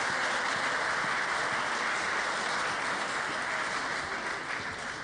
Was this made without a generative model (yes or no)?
yes